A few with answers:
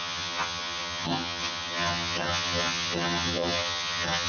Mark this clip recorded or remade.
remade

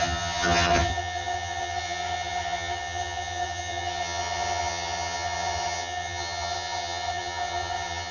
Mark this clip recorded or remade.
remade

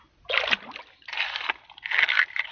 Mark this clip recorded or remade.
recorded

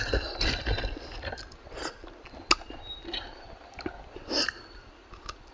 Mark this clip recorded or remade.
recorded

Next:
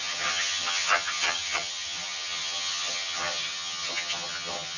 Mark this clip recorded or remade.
remade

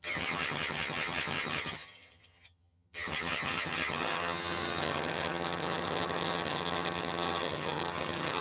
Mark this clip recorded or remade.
remade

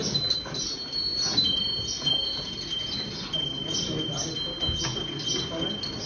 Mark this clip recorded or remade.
recorded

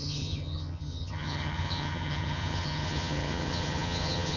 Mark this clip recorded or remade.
remade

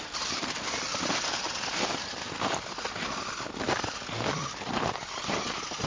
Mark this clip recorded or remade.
recorded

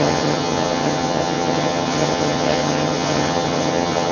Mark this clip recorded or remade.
remade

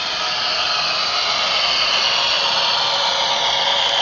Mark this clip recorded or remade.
recorded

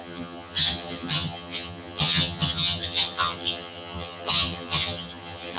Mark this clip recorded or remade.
remade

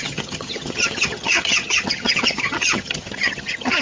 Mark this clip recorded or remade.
remade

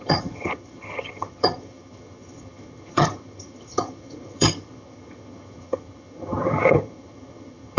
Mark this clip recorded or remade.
remade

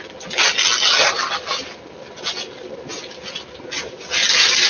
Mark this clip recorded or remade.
recorded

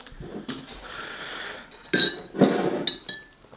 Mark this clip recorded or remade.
recorded